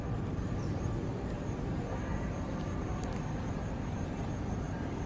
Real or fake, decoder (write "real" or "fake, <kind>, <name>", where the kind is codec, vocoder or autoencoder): fake, vocoder, BigVGAN v2